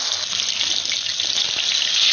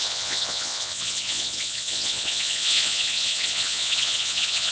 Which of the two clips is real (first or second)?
first